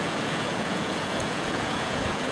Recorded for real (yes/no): no